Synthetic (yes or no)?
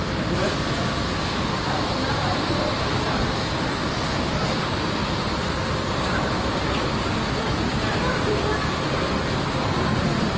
no